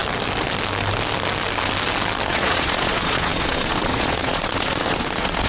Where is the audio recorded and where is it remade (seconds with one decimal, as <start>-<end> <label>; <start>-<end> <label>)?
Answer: 0.0-2.3 recorded; 2.3-5.5 remade